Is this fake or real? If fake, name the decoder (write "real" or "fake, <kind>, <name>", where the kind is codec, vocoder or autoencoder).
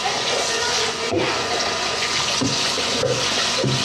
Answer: fake, vocoder, Vocos